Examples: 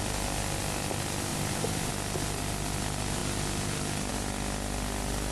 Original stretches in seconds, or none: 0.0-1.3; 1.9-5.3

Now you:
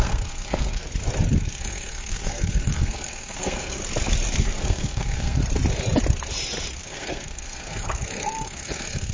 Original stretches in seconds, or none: 0.8-1.4; 3.8-4.4; 5.4-6.8